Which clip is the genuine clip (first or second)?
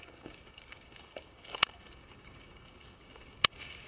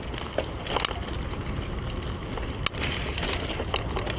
second